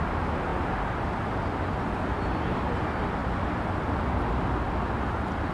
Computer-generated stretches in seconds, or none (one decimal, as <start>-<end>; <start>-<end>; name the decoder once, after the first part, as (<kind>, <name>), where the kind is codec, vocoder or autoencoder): none